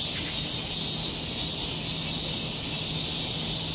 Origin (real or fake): real